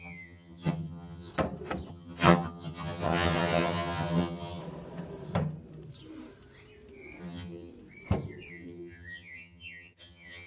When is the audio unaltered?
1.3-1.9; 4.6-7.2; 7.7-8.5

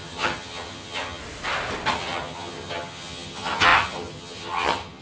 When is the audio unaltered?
1.2-1.9